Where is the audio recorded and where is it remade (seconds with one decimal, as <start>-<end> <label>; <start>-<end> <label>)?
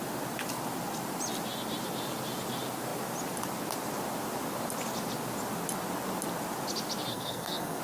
0.0-7.1 recorded; 7.1-7.8 remade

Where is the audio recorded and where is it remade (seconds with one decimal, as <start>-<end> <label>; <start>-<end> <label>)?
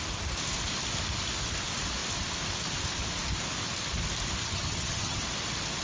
0.0-4.4 recorded; 4.4-5.2 remade; 5.2-5.8 recorded